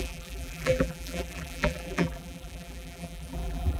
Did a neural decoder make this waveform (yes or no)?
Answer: yes